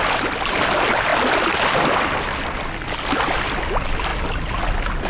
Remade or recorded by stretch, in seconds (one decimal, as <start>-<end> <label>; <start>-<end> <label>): 0.0-5.1 recorded